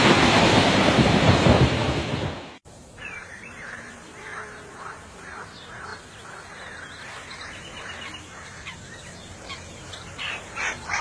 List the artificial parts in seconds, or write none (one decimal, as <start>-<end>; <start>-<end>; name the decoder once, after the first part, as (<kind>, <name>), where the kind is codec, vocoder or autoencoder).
0.0-1.8 (vocoder, BigVGAN v2); 2.6-4.3; 4.8-5.9; 9.7-11.0